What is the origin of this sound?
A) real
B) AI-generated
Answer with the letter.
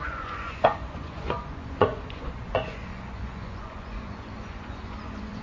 B